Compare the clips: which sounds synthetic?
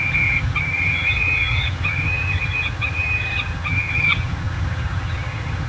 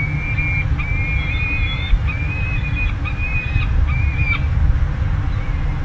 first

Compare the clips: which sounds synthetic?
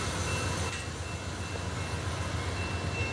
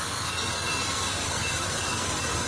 second